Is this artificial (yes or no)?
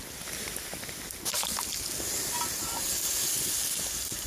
no